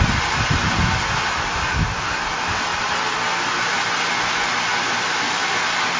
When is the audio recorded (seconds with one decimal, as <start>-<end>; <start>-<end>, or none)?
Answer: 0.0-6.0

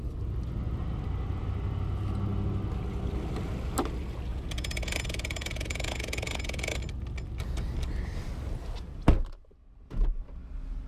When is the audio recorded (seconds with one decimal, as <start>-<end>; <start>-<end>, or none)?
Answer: 0.0-4.3; 6.8-10.9

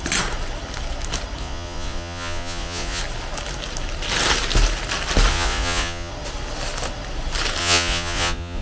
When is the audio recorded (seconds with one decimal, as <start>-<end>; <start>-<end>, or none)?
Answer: 0.0-1.4; 3.0-5.3; 6.1-7.6